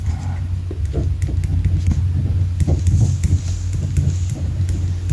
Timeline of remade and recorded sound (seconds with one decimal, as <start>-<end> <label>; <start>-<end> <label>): 0.0-5.1 recorded